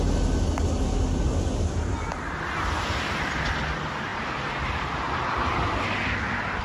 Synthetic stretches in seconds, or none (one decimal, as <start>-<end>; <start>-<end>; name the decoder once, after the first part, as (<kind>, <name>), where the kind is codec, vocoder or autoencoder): none